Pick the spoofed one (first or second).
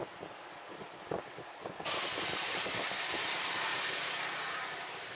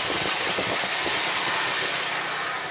first